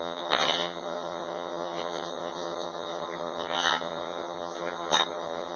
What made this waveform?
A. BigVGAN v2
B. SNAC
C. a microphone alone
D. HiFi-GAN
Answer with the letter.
D